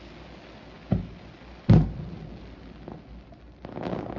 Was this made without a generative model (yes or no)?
yes